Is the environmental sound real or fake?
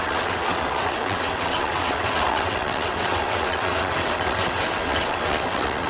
fake